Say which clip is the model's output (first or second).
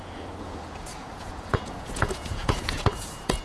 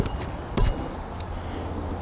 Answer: first